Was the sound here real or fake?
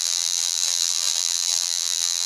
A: fake